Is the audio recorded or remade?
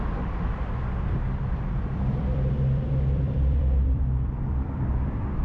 remade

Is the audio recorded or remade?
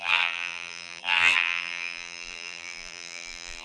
remade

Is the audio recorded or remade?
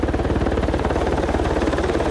remade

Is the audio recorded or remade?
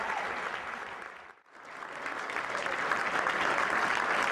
recorded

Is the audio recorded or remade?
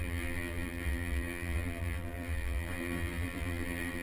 remade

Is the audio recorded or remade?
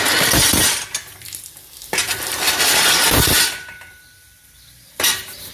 remade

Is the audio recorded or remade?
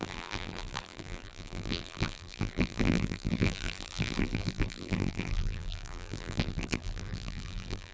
remade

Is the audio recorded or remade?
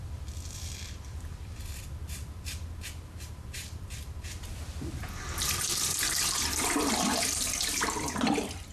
remade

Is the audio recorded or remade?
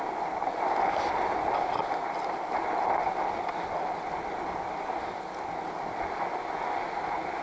recorded